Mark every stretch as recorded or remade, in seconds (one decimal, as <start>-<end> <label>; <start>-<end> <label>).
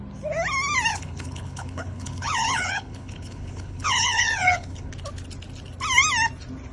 0.0-0.9 recorded; 0.9-4.9 remade; 4.9-6.7 recorded